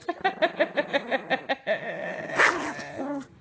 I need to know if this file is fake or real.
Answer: real